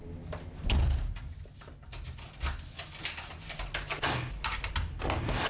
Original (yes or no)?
yes